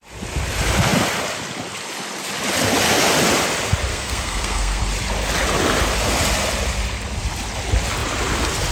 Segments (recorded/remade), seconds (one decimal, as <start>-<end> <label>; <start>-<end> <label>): 0.0-3.9 recorded; 3.9-4.8 remade; 4.8-8.7 recorded